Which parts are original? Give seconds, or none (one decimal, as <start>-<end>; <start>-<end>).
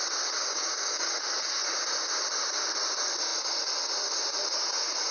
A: 0.0-0.4; 1.1-5.1